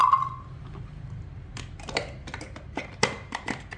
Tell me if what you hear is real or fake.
real